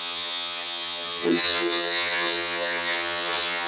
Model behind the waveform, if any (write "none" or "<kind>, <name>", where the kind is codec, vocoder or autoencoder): vocoder, HiFi-GAN